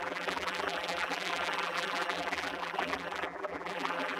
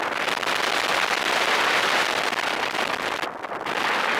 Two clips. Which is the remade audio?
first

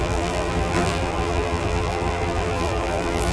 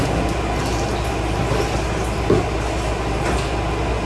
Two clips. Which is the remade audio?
first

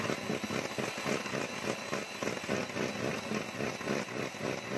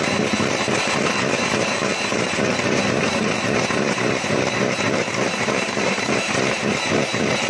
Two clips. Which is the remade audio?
second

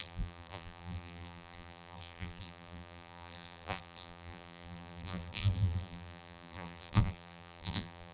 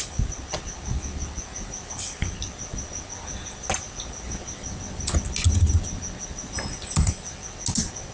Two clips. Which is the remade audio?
first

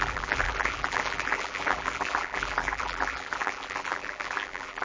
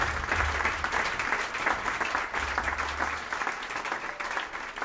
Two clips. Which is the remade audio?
first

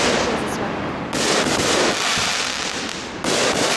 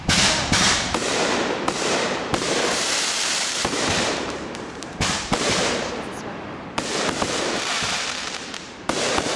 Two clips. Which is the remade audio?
second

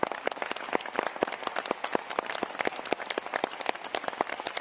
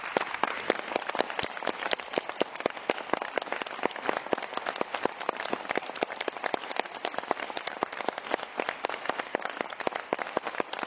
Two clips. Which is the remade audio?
second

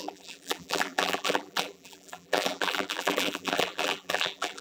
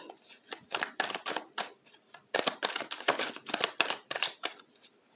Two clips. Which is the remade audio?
first